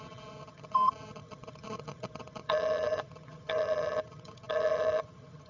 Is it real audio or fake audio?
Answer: fake